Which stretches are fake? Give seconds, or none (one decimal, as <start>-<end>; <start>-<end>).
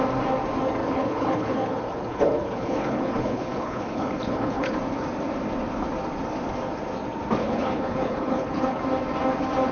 0.8-4.8; 7.4-8.8